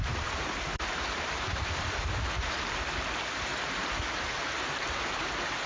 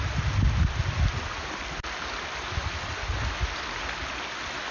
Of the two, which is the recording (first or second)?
second